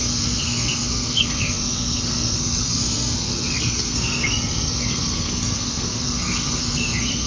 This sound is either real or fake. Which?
fake